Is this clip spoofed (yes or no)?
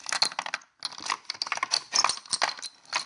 no